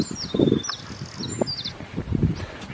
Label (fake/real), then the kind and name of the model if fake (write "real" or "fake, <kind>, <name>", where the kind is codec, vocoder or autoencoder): real